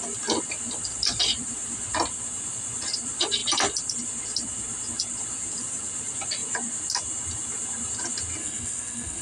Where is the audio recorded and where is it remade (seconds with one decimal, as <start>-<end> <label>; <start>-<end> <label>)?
0.0-8.4 recorded; 8.4-9.2 remade